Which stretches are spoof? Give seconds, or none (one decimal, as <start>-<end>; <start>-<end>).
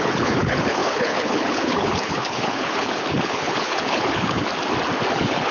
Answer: 0.0-4.5; 5.1-5.5